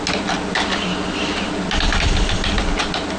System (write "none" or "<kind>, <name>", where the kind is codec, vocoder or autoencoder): none